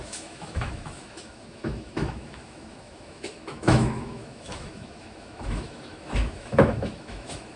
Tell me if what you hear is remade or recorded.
remade